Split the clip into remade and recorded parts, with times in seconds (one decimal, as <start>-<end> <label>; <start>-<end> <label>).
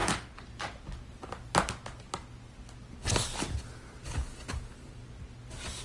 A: 0.0-5.8 recorded